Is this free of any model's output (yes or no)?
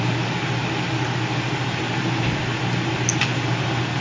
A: yes